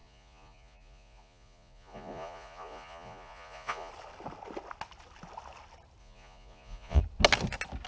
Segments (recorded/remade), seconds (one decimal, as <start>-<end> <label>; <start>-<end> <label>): 0.0-3.9 remade; 3.9-6.0 recorded; 6.0-7.0 remade; 7.0-7.9 recorded